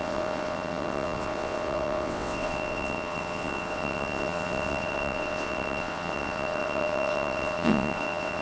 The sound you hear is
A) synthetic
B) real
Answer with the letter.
A